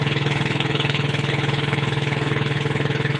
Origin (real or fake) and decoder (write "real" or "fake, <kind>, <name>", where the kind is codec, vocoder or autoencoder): fake, codec, HILCodec